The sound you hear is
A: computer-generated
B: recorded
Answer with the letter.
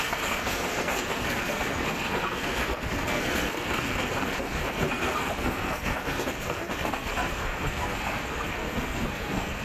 A